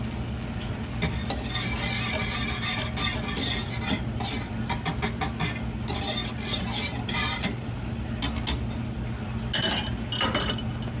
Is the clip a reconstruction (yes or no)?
no